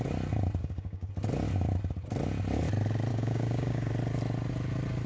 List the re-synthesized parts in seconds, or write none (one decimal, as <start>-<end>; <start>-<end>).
0.6-1.1; 3.1-3.9